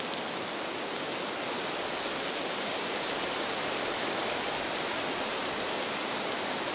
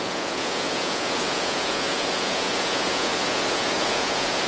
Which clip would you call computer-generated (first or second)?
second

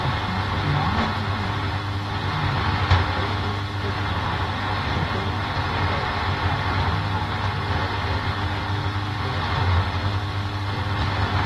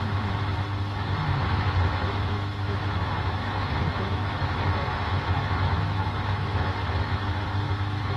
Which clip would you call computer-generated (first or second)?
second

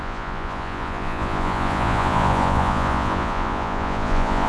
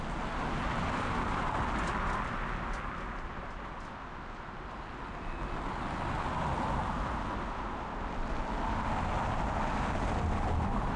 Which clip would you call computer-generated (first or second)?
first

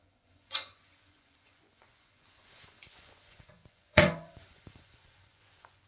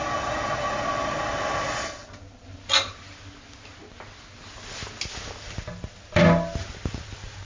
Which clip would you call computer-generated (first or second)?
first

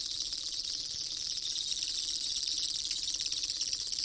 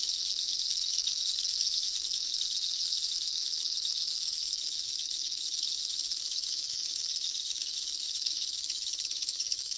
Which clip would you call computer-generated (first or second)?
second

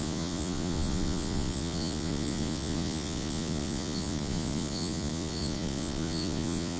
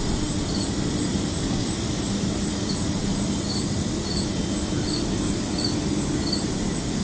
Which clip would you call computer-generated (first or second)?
first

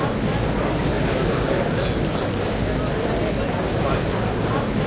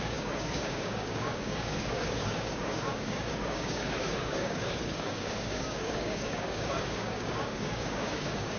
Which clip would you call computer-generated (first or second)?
second